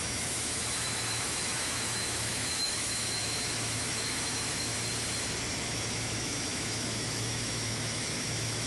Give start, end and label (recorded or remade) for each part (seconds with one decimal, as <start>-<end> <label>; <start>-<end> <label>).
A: 0.0-4.7 remade; 4.7-5.6 recorded; 5.6-8.7 remade